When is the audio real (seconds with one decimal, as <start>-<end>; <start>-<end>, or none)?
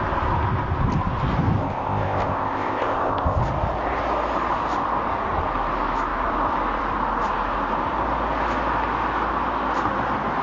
0.0-1.6; 3.4-10.4